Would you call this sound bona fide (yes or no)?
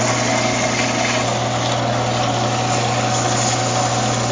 yes